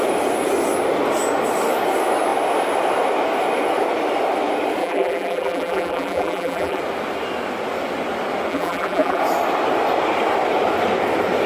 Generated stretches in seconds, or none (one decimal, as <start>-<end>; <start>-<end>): 4.8-6.8; 8.5-9.2